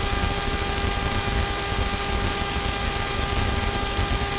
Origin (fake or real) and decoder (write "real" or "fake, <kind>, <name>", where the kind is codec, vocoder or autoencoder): real